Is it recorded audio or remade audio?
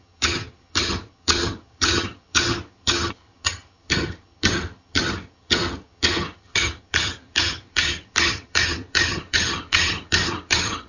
remade